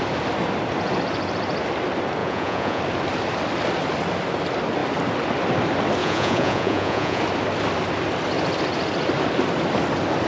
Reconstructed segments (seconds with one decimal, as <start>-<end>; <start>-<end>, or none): 2.2-2.8; 6.0-7.2